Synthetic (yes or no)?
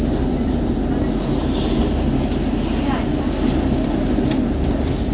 no